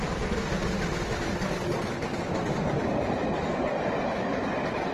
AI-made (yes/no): no